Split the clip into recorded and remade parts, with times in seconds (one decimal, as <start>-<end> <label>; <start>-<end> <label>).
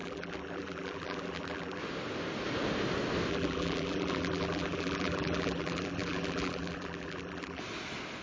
0.0-1.8 remade; 1.8-3.3 recorded; 3.3-7.6 remade; 7.6-8.2 recorded